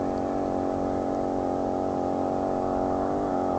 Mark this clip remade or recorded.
recorded